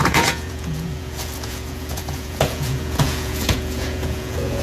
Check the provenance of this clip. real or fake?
fake